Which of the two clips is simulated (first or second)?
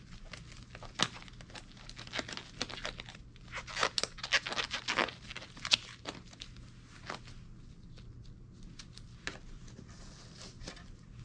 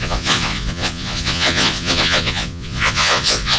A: second